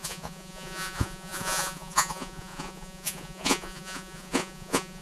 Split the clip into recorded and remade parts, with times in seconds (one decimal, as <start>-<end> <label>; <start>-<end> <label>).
0.0-5.0 remade